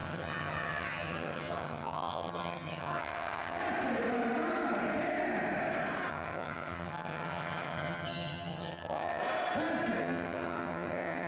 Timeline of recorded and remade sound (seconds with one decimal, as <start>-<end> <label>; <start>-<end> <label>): 0.0-3.6 remade; 3.6-6.1 recorded; 6.1-9.2 remade; 9.2-10.0 recorded; 10.0-11.3 remade